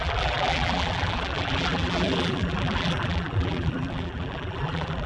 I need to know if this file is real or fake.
fake